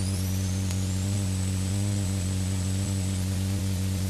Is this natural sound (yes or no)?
no